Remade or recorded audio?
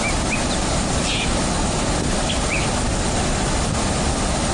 recorded